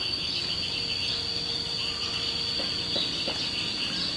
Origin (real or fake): real